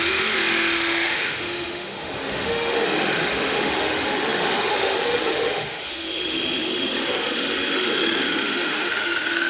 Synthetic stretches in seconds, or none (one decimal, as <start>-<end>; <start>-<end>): 0.0-9.5